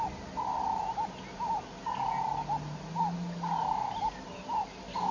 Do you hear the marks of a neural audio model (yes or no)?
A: no